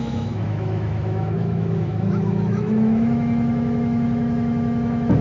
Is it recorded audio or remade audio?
remade